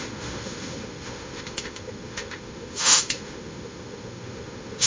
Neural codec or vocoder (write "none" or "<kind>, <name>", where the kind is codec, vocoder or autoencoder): autoencoder, DAC-VAE